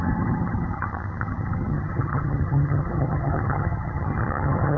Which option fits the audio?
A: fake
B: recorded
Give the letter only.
A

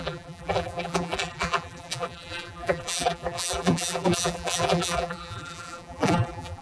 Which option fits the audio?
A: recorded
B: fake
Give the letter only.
B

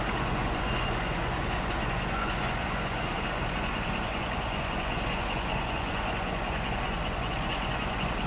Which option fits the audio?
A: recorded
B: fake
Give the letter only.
B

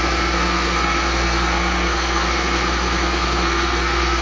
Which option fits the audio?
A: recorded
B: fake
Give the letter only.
B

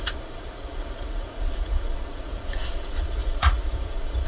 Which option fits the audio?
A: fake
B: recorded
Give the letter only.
A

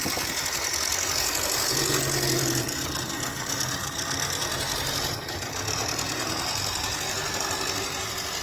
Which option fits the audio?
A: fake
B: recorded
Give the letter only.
B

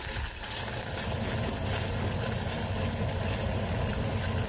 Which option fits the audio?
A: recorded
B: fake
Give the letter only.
A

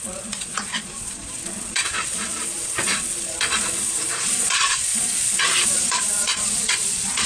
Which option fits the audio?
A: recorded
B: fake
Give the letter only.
B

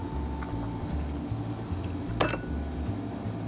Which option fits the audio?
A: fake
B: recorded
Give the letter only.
B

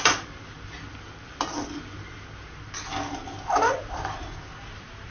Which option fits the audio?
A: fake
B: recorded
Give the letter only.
B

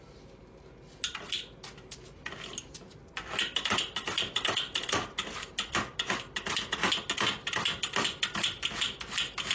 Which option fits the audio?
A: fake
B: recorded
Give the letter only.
B